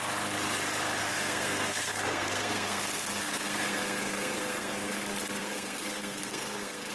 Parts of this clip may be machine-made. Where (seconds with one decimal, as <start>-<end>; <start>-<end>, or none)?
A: 1.0-5.0; 5.4-6.9